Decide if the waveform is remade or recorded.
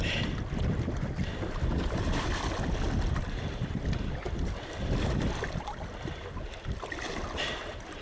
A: remade